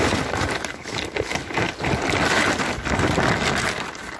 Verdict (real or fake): real